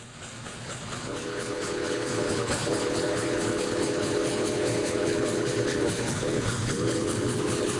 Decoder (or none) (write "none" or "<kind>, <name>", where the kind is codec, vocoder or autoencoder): codec, HILCodec